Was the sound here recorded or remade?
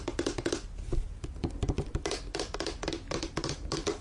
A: recorded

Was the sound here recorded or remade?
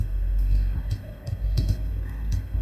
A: remade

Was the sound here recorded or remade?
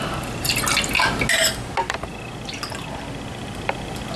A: recorded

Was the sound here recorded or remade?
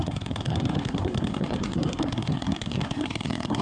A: remade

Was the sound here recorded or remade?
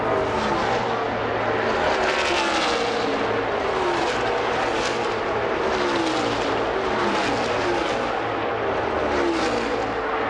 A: recorded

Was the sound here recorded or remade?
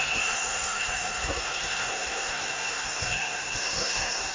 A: remade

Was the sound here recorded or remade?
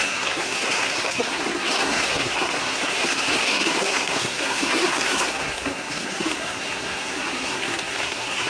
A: remade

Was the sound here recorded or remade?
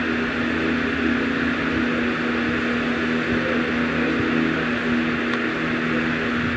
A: recorded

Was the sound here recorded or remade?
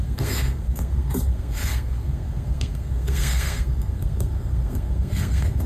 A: remade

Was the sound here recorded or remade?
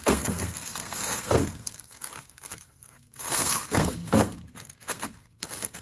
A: remade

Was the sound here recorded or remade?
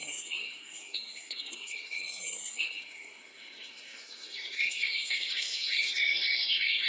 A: remade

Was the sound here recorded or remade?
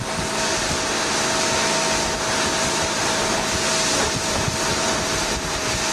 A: recorded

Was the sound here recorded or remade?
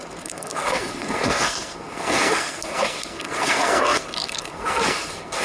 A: remade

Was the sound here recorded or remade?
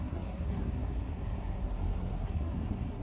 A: remade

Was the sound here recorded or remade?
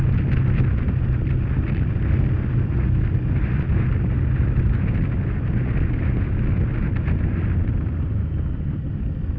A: recorded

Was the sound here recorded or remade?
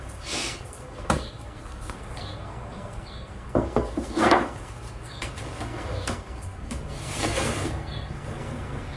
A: remade